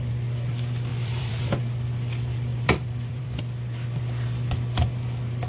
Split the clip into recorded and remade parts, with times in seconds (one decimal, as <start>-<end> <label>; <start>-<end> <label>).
0.0-0.9 recorded; 0.9-1.6 remade; 1.6-2.5 recorded; 2.5-3.4 remade; 3.4-5.5 recorded